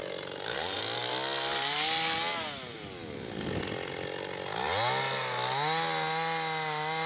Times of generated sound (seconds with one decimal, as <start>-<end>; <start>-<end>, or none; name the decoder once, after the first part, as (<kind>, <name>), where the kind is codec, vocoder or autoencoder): 0.0-0.8 (vocoder, BigVGAN v2)